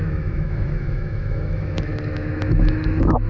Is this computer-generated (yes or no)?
yes